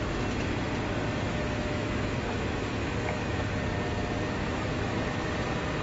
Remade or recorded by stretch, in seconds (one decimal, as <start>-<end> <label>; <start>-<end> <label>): 0.0-1.3 recorded; 1.3-3.5 remade; 3.5-4.4 recorded; 4.4-5.3 remade; 5.3-5.8 recorded